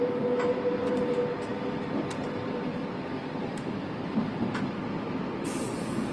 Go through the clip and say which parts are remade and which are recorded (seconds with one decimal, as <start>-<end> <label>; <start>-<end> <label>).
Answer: 0.0-1.5 recorded; 1.5-4.8 remade; 4.8-6.1 recorded

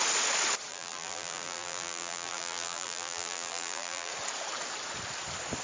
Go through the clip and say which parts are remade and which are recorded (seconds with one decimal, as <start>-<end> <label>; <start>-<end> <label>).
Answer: 0.0-0.7 recorded; 0.7-4.1 remade; 4.1-5.6 recorded

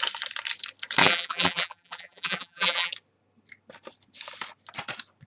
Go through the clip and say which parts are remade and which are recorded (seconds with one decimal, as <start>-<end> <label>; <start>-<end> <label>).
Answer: 0.0-1.0 recorded; 1.0-2.9 remade; 2.9-5.3 recorded

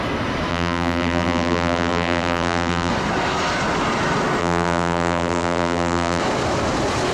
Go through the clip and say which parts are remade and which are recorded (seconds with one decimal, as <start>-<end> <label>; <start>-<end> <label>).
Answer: 0.0-0.5 recorded; 0.5-2.9 remade; 2.9-4.4 recorded; 4.4-6.2 remade; 6.2-7.1 recorded

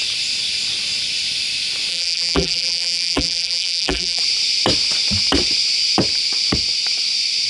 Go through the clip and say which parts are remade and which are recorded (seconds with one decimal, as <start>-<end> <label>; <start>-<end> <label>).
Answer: 0.0-1.9 recorded; 1.9-4.2 remade; 4.2-7.5 recorded

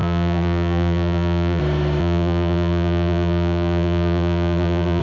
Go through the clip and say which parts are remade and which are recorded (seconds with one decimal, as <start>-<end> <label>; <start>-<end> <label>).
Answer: 0.0-1.6 remade; 1.6-2.0 recorded; 2.0-5.0 remade

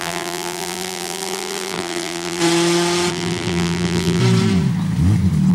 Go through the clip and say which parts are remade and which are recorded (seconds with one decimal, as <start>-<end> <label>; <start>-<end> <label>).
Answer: 0.0-2.4 remade; 2.4-3.1 recorded; 3.1-4.2 remade; 4.2-5.5 recorded